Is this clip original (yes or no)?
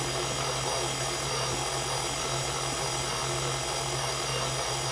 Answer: yes